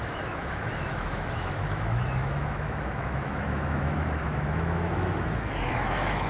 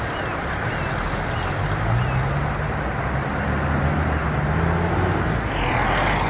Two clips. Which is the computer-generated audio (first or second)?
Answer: first